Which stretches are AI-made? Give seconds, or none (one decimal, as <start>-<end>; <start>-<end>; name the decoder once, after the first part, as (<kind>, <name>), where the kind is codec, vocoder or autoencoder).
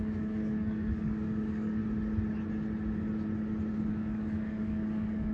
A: 0.0-1.8 (codec, DAC); 3.9-5.3